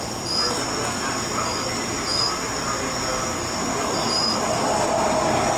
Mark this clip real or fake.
real